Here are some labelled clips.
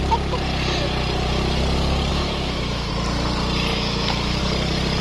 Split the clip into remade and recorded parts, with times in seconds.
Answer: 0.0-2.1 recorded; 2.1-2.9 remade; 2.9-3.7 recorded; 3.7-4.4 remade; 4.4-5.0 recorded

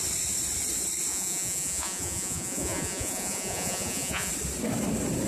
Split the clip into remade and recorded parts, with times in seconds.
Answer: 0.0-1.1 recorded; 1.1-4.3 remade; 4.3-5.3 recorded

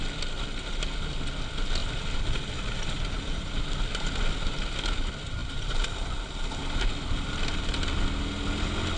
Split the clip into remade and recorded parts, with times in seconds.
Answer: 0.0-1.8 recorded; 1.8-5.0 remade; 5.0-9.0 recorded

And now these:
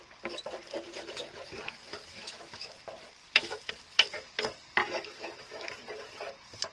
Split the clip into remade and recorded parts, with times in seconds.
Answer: 0.0-2.1 recorded; 2.1-2.7 remade; 2.7-3.2 recorded; 3.2-3.7 remade; 3.7-4.8 recorded; 4.8-5.7 remade; 5.7-6.7 recorded